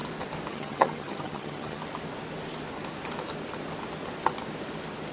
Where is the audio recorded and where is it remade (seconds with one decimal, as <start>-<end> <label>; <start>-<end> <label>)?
0.0-0.5 recorded; 0.5-1.8 remade; 1.8-5.1 recorded